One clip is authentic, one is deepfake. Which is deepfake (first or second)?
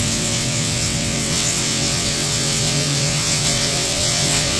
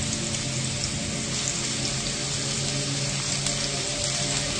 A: first